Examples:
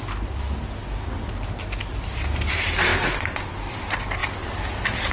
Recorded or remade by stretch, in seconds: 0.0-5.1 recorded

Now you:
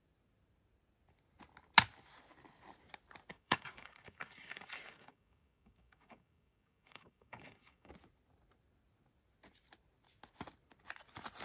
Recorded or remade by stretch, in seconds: 0.0-3.3 recorded; 3.3-7.9 remade; 7.9-11.4 recorded

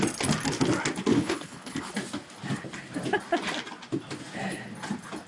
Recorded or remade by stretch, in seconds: 0.0-1.1 recorded; 1.1-1.9 remade; 1.9-5.3 recorded

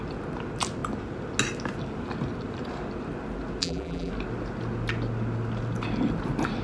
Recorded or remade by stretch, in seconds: 0.0-3.6 recorded; 3.6-4.1 remade; 4.1-6.6 recorded

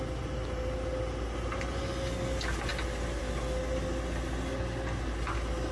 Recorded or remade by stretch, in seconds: 0.0-5.7 recorded